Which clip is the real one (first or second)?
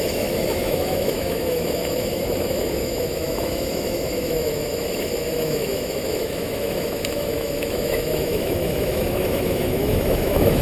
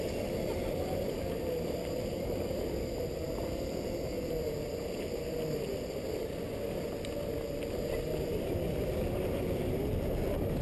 second